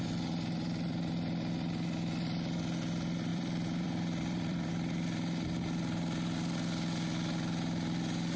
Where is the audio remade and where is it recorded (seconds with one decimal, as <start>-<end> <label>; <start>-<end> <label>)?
0.0-3.3 recorded; 3.3-4.7 remade; 4.7-8.4 recorded